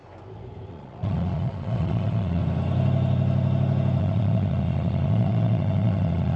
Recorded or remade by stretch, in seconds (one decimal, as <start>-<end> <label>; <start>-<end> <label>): 0.0-0.7 recorded; 0.7-2.4 remade; 2.4-4.0 recorded; 4.0-6.4 remade